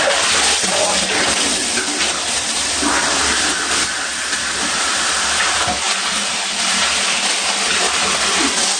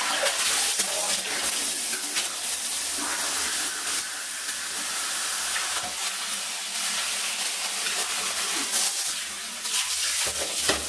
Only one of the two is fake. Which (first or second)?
first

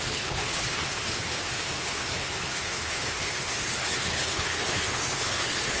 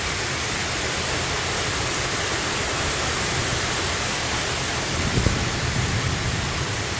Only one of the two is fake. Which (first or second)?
first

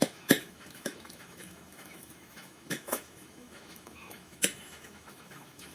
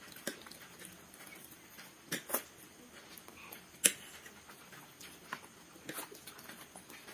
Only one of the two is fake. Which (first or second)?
first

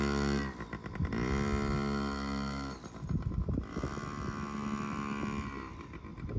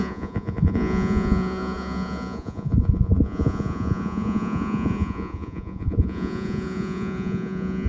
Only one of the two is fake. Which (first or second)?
second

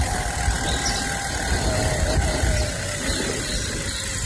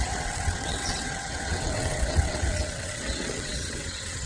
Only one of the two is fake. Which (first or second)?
second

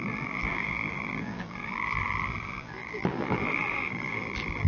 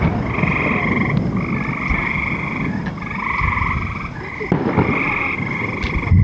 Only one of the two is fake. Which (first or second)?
first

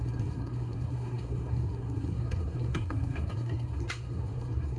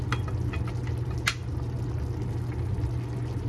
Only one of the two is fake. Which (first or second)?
first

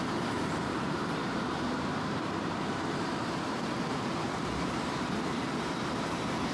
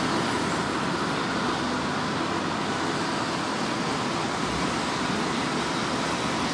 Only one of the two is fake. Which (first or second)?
first